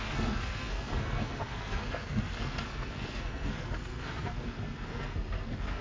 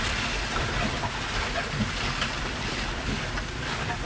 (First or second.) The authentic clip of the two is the second